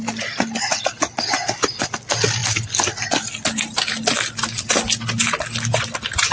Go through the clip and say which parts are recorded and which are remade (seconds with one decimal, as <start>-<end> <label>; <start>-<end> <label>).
0.0-6.3 recorded